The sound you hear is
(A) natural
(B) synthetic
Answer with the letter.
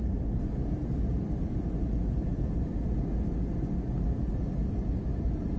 A